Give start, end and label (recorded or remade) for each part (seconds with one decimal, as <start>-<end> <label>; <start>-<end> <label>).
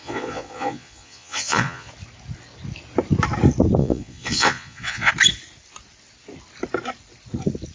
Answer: 0.0-1.9 remade; 1.9-3.8 recorded; 3.8-5.1 remade; 5.1-7.7 recorded